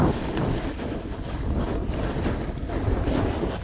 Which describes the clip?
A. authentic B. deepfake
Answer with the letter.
A